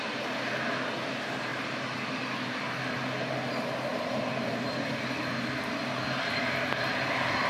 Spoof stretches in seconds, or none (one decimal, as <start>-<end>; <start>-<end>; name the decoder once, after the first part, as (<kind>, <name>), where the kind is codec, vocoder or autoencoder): 3.9-4.9 (vocoder, BigVGAN v2)